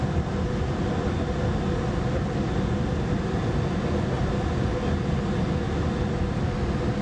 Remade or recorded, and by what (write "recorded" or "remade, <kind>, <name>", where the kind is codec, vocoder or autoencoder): recorded